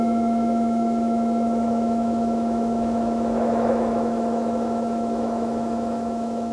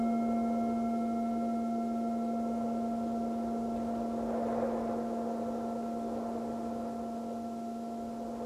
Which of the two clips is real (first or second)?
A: second